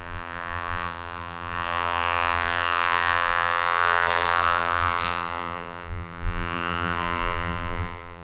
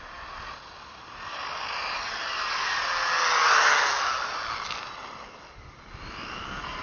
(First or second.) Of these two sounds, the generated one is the first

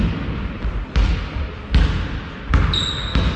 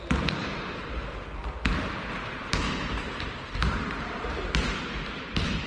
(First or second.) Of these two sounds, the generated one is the second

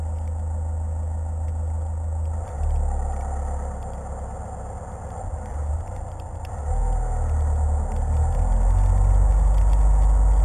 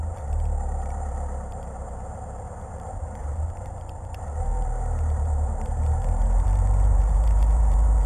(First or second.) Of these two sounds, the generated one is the second